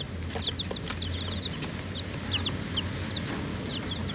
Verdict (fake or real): real